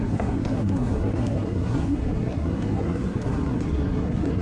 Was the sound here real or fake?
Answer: fake